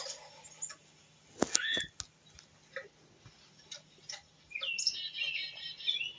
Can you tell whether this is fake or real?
real